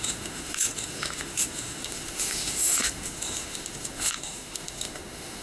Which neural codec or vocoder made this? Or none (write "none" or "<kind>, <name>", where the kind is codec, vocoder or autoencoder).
autoencoder, DAC-VAE